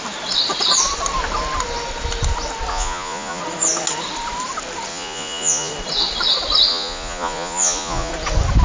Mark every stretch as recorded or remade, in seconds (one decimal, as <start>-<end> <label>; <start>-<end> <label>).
0.0-2.7 recorded; 2.7-3.4 remade; 3.4-4.9 recorded; 4.9-5.7 remade; 5.7-6.7 recorded; 6.7-8.1 remade; 8.1-8.6 recorded